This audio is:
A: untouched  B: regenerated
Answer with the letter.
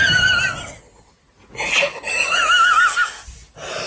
A